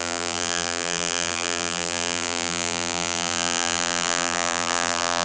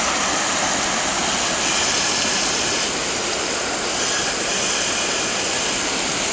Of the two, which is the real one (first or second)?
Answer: second